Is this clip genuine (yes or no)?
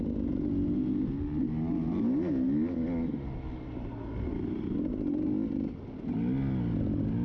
yes